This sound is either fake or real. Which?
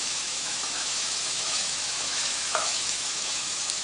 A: fake